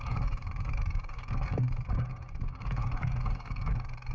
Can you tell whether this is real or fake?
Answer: fake